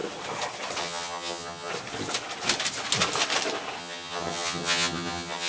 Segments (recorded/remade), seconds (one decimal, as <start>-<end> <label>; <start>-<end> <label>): 0.0-0.8 recorded; 0.8-1.7 remade; 1.7-3.8 recorded; 3.8-5.5 remade

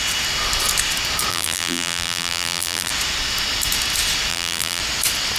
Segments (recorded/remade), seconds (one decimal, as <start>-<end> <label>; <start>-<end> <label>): 0.0-1.3 recorded; 1.3-2.9 remade; 2.9-4.3 recorded; 4.3-4.8 remade; 4.8-5.4 recorded

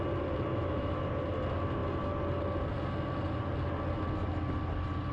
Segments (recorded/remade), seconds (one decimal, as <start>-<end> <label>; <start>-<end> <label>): 0.0-0.5 recorded; 0.5-1.0 remade; 1.0-5.1 recorded

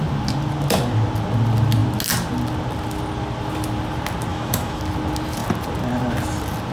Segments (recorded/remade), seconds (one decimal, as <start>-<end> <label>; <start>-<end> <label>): 0.0-4.3 recorded; 4.3-4.8 remade; 4.8-6.7 recorded

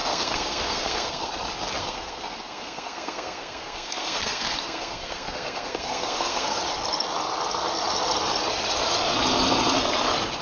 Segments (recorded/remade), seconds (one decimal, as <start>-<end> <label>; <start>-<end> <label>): 0.0-1.3 remade; 1.3-1.8 recorded; 1.8-6.6 remade; 6.6-10.4 recorded

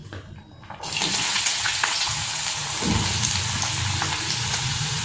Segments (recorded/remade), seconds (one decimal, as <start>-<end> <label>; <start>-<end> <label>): 0.0-1.1 recorded; 1.1-2.4 remade; 2.4-4.5 recorded; 4.5-5.0 remade

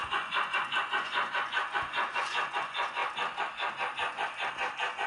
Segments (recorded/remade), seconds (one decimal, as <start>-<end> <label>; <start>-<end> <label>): 0.0-3.0 remade; 3.0-5.1 recorded